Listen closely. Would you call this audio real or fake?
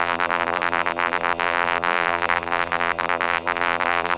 fake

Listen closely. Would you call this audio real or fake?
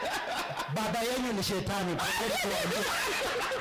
fake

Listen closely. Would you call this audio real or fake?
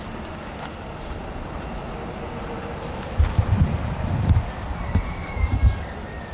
real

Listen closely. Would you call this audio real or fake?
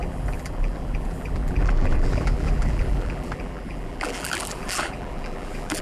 fake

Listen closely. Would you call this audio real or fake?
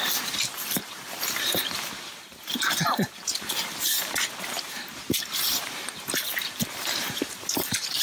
fake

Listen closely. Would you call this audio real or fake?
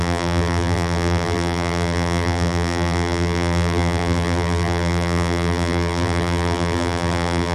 fake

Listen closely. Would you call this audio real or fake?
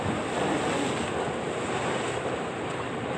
real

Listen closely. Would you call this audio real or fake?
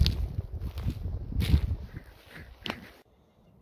real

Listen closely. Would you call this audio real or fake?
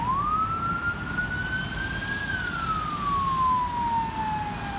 real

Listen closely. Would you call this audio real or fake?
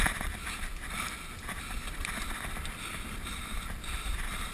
real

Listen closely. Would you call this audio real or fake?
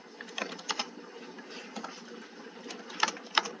fake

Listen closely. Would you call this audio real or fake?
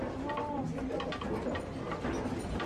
real